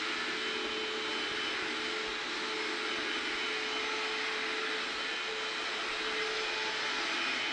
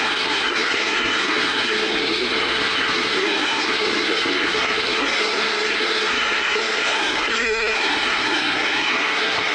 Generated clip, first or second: second